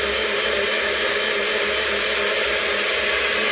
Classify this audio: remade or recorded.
recorded